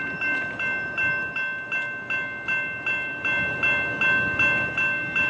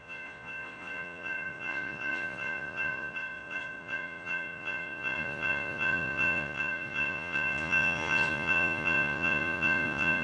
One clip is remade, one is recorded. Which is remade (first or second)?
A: second